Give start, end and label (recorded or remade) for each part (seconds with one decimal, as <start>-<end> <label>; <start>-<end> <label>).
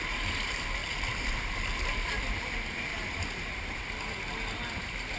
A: 0.0-0.8 recorded; 0.8-2.2 remade; 2.2-5.2 recorded